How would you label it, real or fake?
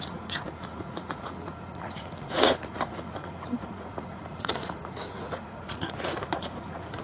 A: fake